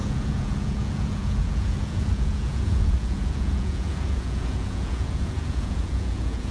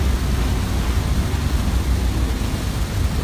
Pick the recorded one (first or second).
second